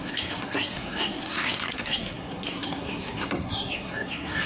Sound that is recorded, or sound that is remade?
remade